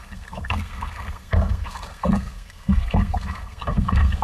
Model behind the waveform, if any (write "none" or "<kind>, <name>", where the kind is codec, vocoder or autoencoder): codec, SNAC